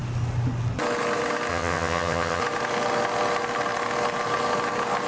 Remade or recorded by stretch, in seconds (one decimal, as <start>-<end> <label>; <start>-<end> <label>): 0.0-1.5 recorded; 1.5-2.4 remade; 2.4-5.1 recorded